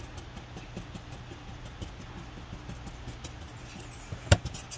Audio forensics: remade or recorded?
recorded